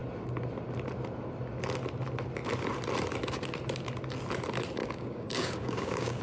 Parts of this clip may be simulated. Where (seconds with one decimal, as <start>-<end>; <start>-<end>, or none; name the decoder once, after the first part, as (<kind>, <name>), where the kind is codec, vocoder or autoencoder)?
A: 4.8-6.2 (codec, DAC)